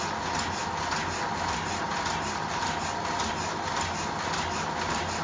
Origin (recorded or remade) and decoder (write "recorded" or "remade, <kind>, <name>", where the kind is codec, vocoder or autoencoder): recorded